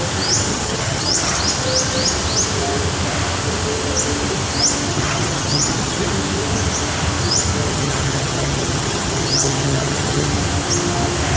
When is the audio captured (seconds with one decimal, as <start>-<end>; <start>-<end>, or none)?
0.0-0.5; 1.4-4.9; 6.1-7.7; 10.3-11.4